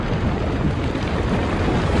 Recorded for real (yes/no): yes